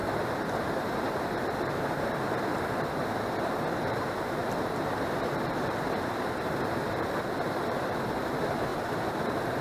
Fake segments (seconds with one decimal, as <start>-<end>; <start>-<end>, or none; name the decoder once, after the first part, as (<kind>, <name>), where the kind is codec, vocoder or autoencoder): 0.7-2.5 (vocoder, BigVGAN v2); 3.7-9.6